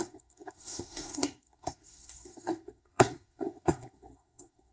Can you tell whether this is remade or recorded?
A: remade